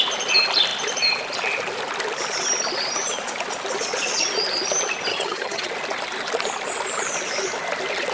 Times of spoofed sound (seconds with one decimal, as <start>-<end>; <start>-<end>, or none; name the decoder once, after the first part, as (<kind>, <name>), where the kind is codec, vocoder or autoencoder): 5.1-5.7 (vocoder, HiFi-GAN)